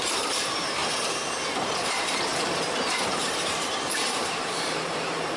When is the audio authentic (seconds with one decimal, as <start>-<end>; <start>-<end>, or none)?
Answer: 0.8-1.5